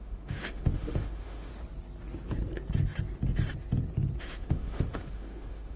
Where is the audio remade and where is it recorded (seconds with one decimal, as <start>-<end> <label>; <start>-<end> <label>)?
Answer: 0.0-1.5 remade; 1.5-4.2 recorded; 4.2-5.8 remade